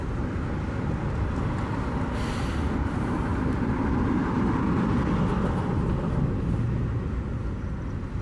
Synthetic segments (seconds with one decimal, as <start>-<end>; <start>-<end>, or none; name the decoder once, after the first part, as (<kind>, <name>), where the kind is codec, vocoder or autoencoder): none